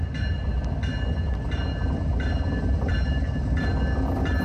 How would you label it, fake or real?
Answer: real